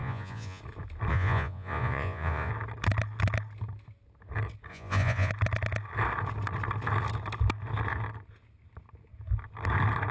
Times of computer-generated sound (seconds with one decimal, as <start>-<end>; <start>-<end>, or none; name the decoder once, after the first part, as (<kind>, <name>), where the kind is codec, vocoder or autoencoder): 0.0-0.6 (vocoder, Vocos); 1.1-2.5; 4.7-5.3